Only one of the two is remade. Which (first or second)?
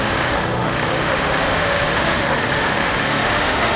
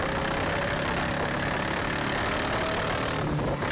first